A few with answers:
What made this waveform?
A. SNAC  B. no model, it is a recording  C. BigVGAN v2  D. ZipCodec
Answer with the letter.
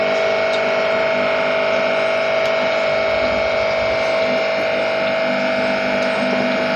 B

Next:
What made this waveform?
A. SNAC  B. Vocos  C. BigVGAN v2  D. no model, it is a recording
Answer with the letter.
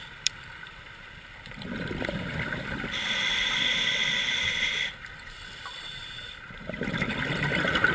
C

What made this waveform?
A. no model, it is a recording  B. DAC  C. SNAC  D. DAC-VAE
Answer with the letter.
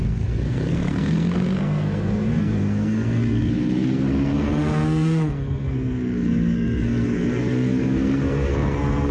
C